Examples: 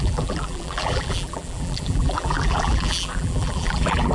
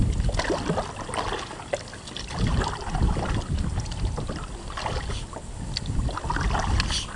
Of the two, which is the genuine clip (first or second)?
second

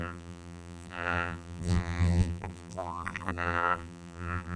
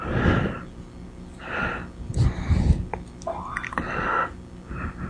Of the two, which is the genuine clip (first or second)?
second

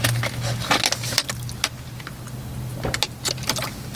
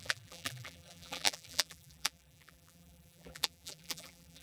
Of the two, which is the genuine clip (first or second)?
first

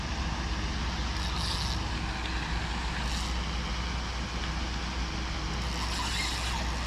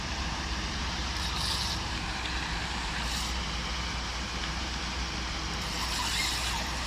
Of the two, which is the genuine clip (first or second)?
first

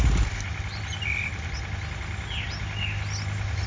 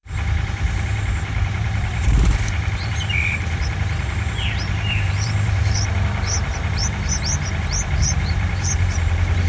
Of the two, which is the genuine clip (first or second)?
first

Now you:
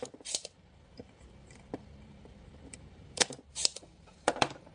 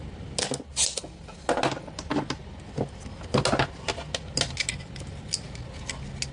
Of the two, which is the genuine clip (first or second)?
second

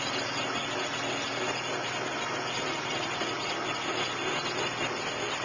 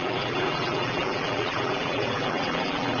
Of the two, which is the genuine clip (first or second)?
first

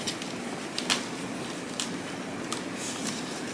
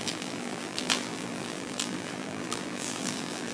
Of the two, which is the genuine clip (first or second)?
first